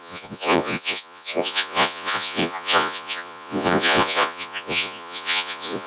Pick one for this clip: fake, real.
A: fake